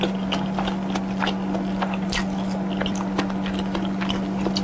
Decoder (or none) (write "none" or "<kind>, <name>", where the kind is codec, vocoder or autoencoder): none